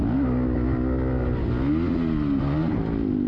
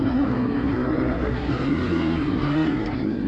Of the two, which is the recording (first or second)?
first